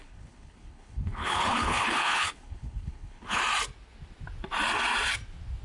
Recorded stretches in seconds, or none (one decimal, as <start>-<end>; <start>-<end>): 3.4-5.6